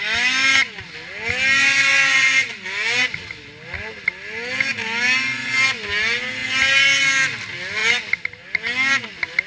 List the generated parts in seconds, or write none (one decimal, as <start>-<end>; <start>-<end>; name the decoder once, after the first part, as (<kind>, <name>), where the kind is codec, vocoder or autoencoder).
none